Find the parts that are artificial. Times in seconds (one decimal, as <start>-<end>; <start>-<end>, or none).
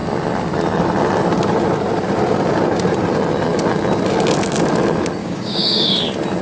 5.2-6.0